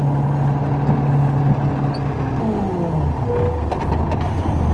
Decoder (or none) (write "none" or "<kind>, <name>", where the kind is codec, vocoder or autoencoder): none